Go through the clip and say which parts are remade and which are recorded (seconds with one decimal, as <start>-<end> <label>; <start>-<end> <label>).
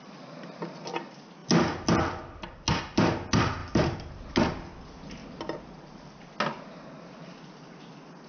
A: 0.0-3.6 recorded; 3.6-4.2 remade; 4.2-5.2 recorded; 5.2-6.2 remade; 6.2-8.3 recorded